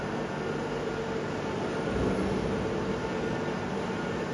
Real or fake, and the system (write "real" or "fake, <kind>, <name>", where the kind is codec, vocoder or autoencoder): real